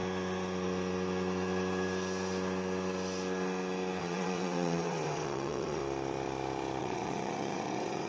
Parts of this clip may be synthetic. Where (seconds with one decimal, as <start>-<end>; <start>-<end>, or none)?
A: 4.0-5.8; 6.8-8.1